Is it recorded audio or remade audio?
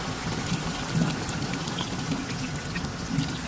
recorded